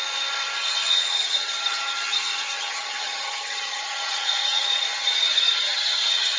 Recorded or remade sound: remade